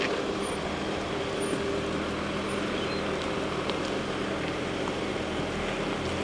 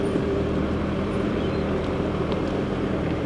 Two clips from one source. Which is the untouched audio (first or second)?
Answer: first